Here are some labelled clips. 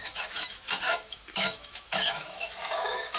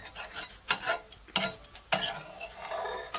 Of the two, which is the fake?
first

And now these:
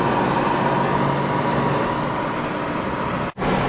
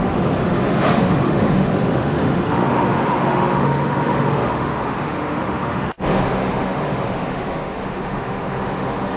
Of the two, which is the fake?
second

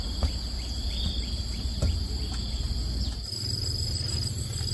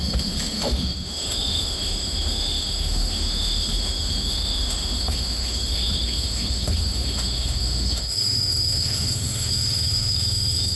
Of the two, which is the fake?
second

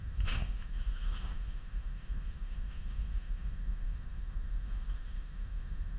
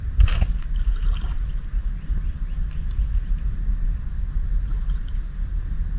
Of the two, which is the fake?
first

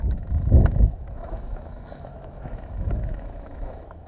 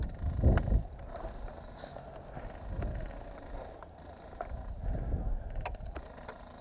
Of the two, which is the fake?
first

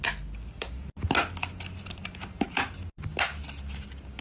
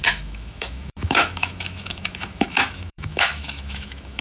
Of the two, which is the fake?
second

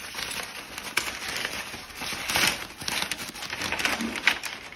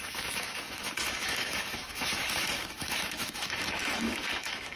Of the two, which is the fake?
second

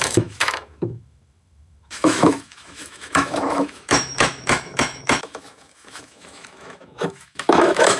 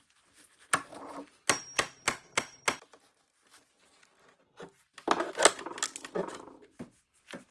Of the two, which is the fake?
first